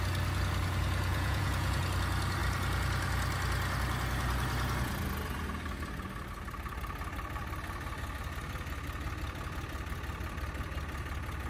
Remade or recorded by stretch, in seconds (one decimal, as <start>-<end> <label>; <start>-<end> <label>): 0.0-1.1 recorded; 1.1-1.8 remade; 1.8-11.5 recorded